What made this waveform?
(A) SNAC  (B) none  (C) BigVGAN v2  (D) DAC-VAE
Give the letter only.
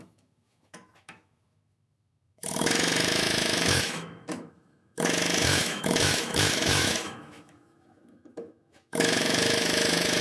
D